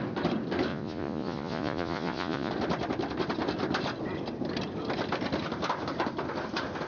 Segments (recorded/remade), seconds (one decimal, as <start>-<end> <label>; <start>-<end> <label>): 0.0-0.7 recorded; 0.7-2.5 remade; 2.5-6.9 recorded